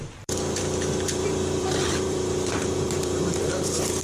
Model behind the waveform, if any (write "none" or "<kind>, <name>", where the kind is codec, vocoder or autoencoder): vocoder, BigVGAN v2